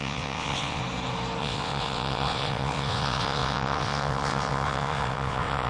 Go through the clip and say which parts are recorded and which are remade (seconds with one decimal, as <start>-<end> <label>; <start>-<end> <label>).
0.0-0.8 remade; 0.8-1.4 recorded; 1.4-5.7 remade